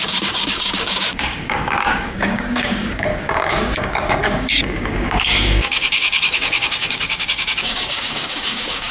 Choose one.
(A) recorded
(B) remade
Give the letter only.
B